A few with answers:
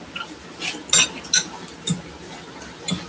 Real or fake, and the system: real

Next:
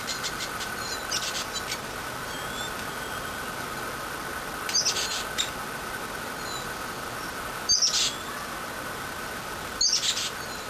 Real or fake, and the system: real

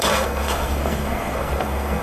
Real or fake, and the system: fake, codec, SNAC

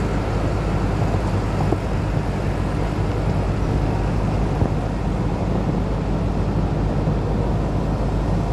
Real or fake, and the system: real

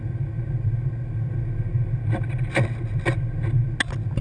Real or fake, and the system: real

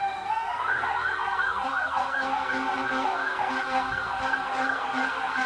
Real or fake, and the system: fake, codec, SNAC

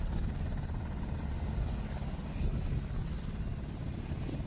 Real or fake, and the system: real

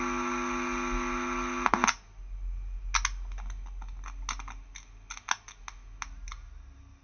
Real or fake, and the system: real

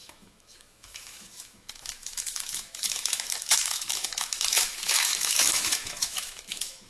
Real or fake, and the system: fake, autoencoder, DAC-VAE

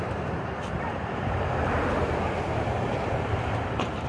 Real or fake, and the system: fake, vocoder, BigVGAN v2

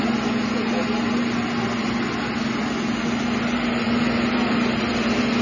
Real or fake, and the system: real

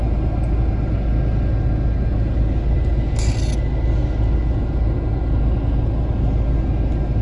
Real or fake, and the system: real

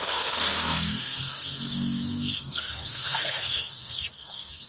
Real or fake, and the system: fake, codec, SNAC